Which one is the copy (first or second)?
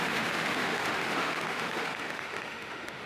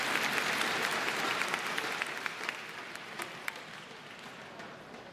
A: first